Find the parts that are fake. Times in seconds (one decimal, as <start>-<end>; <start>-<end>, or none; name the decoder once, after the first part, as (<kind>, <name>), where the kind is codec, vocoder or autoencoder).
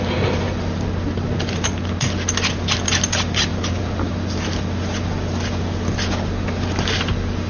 3.5-4.1 (vocoder, BigVGAN v2)